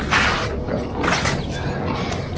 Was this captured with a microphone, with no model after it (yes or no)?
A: yes